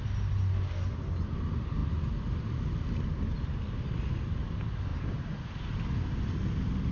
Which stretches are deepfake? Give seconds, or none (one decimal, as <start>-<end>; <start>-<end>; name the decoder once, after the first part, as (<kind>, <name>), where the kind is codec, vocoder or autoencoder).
none